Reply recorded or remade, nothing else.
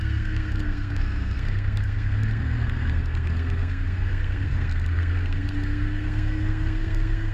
remade